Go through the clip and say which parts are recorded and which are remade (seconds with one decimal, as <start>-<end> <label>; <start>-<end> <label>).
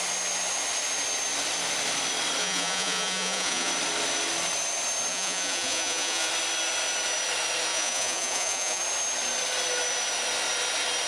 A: 0.0-2.4 recorded; 2.4-3.7 remade; 3.7-5.1 recorded; 5.1-6.3 remade; 6.3-7.7 recorded; 7.7-8.8 remade; 8.8-11.1 recorded